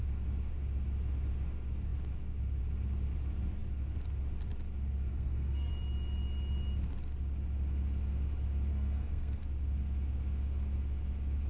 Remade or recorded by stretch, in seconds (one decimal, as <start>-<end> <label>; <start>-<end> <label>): 0.0-5.1 recorded; 5.1-5.7 remade; 5.7-8.7 recorded; 8.7-9.4 remade; 9.4-11.5 recorded